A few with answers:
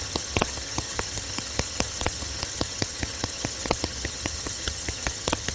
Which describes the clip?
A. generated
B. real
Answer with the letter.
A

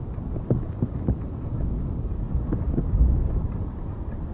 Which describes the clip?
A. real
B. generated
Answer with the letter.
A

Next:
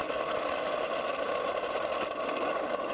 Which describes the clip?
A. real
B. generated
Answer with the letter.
A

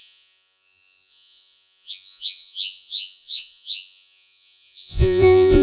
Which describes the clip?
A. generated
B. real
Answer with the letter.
A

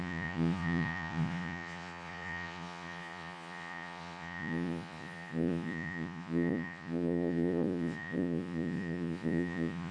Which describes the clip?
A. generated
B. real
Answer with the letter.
A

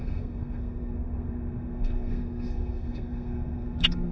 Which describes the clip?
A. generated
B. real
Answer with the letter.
A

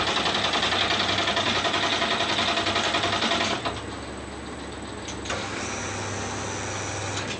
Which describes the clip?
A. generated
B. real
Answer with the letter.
B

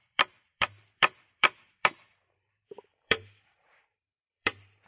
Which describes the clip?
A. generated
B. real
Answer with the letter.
A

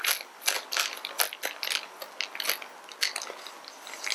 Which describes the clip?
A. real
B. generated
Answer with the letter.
A